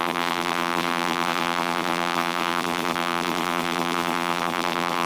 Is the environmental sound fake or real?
fake